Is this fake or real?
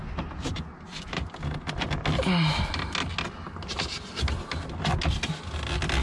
real